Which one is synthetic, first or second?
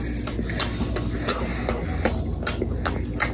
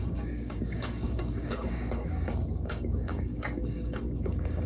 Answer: second